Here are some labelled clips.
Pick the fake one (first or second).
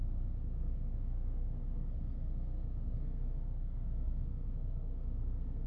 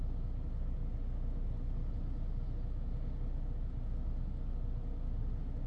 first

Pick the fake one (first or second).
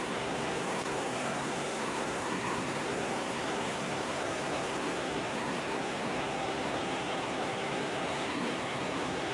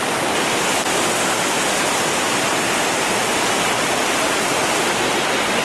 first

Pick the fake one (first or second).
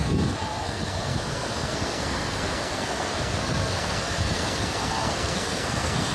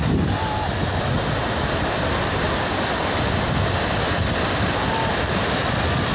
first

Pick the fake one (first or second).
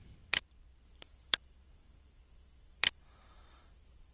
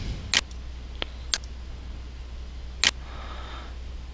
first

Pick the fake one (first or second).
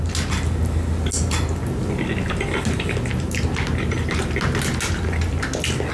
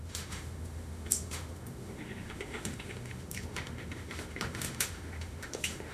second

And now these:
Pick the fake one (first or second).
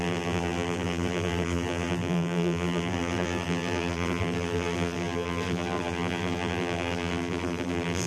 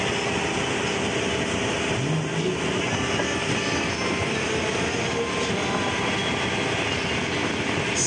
first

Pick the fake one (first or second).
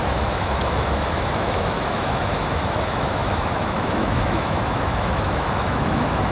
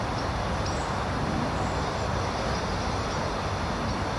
first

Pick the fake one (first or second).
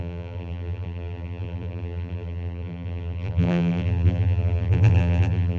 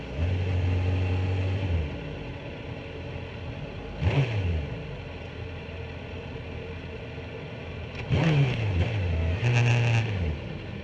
first